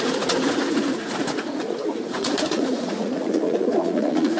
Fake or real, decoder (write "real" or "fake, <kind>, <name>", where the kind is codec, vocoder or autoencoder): fake, vocoder, Vocos